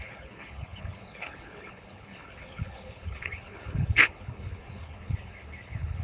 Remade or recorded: remade